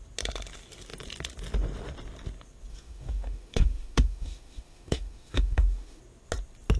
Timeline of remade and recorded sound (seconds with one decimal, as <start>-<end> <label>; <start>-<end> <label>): 0.0-2.7 recorded; 2.7-6.0 remade; 6.0-6.8 recorded